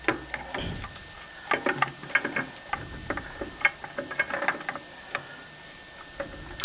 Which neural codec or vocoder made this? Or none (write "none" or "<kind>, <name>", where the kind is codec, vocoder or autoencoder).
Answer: none